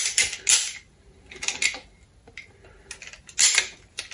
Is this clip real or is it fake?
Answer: real